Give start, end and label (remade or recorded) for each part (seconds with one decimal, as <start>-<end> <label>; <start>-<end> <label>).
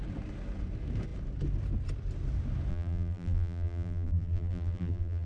0.0-2.7 recorded; 2.7-5.3 remade